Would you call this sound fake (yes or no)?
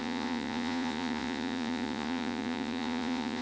yes